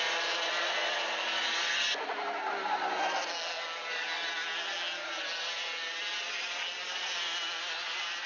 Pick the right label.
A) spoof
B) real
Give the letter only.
B